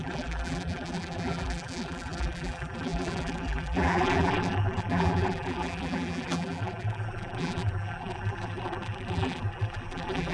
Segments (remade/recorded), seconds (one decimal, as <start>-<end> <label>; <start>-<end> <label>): 0.0-10.3 remade